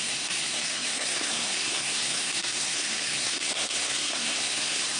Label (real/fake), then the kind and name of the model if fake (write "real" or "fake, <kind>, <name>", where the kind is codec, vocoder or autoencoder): fake, codec, SNAC